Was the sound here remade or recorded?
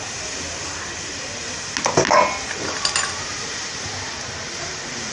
recorded